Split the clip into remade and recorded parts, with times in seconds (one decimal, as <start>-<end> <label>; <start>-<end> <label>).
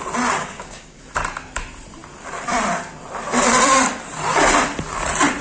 0.0-0.4 recorded; 0.4-1.0 remade; 1.0-5.4 recorded